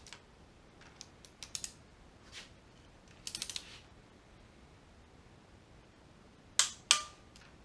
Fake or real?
real